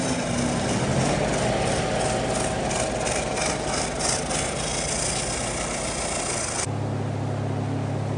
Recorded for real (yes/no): yes